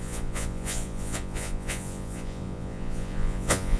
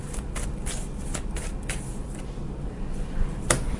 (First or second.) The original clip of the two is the second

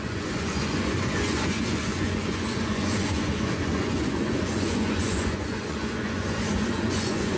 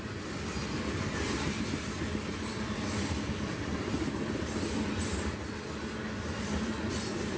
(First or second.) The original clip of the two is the second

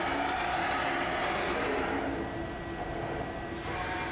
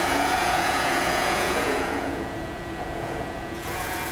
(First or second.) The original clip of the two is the first